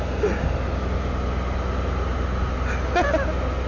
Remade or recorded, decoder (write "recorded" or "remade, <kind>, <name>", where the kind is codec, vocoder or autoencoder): recorded